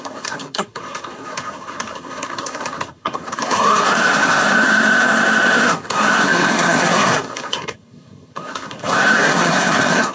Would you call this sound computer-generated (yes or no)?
yes